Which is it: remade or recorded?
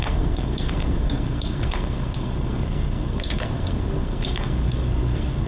remade